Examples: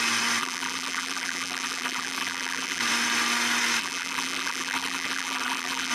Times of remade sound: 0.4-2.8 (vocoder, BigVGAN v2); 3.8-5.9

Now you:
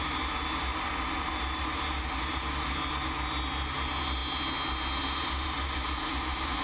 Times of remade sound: none

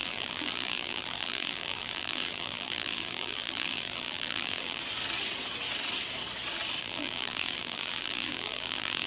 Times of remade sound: 0.0-4.8 (vocoder, BigVGAN v2); 6.8-9.1

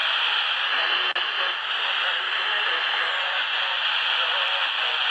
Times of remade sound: 3.1-5.1 (vocoder, Vocos)

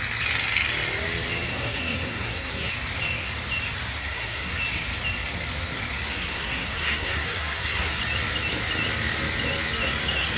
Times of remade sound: 1.5-2.7 (codec, SNAC); 4.0-4.6; 6.1-8.0

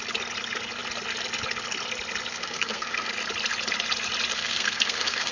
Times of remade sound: 2.3-3.1 (codec, SNAC); 4.3-5.3

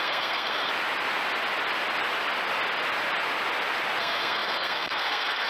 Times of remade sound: 0.0-0.7 (codec, SNAC); 4.0-5.5

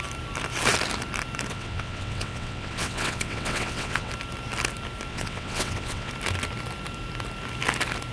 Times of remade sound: 1.5-4.1 (vocoder, WaveNeXt); 5.1-6.1